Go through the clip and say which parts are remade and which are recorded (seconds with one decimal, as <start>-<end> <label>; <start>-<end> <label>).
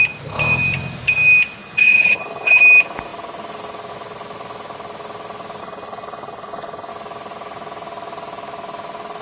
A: 0.0-1.6 recorded; 1.6-2.6 remade; 2.6-5.6 recorded; 5.6-6.9 remade; 6.9-9.2 recorded